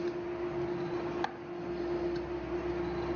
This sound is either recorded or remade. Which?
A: recorded